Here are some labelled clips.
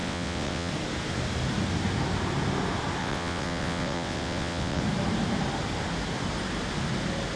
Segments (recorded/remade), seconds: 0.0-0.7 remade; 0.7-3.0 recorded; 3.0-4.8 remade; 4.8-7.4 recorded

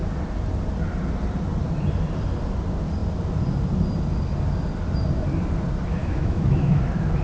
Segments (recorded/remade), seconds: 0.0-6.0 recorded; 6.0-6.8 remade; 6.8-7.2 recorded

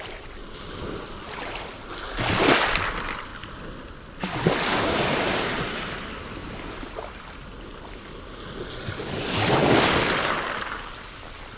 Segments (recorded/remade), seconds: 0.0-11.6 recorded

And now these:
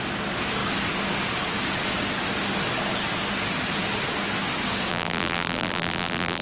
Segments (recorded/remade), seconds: 0.0-4.9 recorded; 4.9-6.4 remade

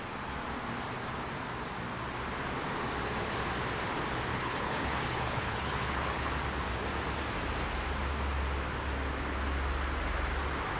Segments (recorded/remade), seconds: 0.0-4.3 recorded; 4.3-6.3 remade; 6.3-10.8 recorded

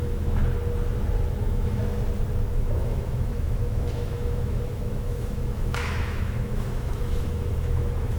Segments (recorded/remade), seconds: 0.0-0.4 remade; 0.4-1.4 recorded; 1.4-1.8 remade; 1.8-2.5 recorded; 2.5-8.2 remade